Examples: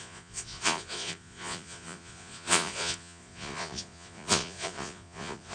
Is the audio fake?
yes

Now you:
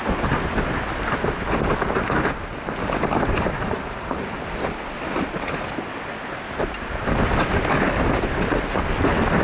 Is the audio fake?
no